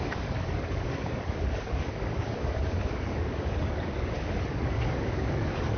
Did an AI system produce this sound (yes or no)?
yes